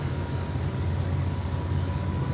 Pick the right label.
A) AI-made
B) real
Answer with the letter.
A